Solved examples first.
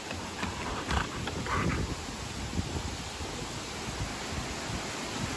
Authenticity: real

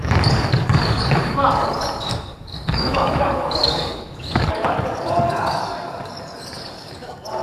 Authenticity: fake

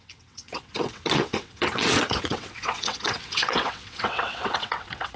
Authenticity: fake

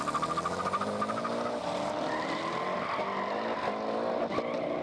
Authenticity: real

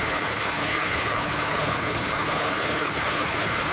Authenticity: fake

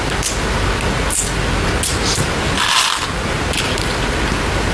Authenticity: real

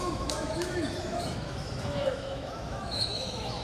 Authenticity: fake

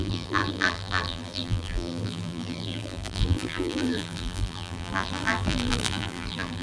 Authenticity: fake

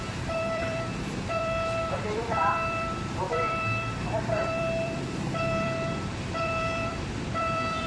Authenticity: fake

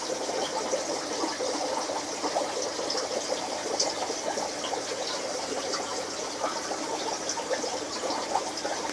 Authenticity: real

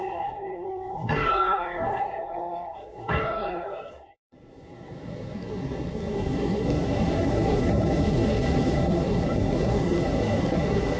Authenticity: fake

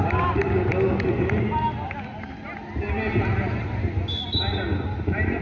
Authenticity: real